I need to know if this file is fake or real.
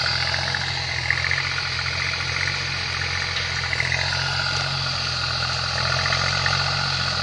real